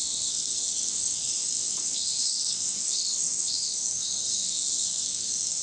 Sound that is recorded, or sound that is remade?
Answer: remade